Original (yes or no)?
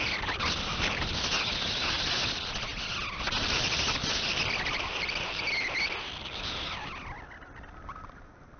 yes